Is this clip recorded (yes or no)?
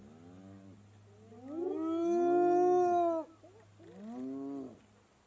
yes